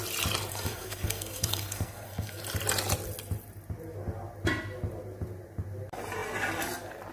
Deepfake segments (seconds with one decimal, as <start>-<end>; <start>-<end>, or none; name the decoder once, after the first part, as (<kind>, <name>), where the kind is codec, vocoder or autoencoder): 0.5-2.4 (codec, SNAC)